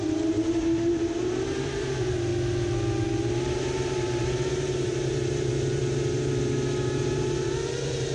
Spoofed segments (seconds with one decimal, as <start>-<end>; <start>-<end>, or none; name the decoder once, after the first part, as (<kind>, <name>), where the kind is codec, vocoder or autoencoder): 0.0-2.3 (vocoder, BigVGAN v2); 3.3-8.1

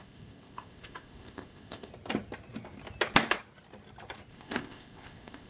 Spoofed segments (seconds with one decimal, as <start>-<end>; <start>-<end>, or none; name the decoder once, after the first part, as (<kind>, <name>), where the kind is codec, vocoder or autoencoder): 0.0-1.9 (codec, ZipCodec); 4.3-5.5

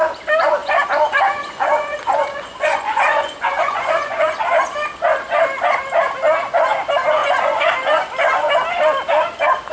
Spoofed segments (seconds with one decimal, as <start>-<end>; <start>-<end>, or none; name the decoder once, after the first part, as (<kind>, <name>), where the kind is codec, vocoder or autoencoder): 0.6-4.4 (vocoder, Vocos); 7.2-7.7

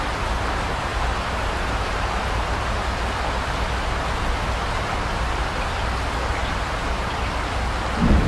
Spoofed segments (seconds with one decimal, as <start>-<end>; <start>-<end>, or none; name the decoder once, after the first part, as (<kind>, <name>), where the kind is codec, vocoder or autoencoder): 0.9-3.0 (vocoder, BigVGAN v2); 6.4-7.1

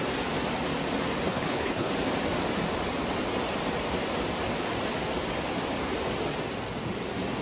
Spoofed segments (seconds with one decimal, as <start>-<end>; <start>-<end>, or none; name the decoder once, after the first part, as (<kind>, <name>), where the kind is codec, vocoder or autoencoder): 1.3-1.9 (codec, HILCodec)

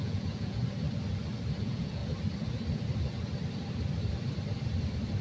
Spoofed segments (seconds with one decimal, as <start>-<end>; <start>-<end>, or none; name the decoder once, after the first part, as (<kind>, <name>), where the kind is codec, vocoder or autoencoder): 0.0-0.6 (vocoder, Vocos); 1.6-2.0

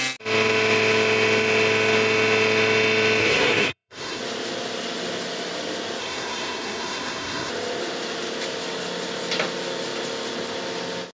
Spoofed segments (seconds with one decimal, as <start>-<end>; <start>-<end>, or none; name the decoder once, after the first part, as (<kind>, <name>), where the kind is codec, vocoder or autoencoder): 3.2-4.2 (codec, SNAC); 6.0-7.5